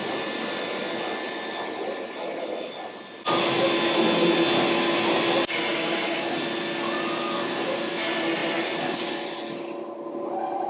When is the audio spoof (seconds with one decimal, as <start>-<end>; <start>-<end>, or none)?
5.7-6.3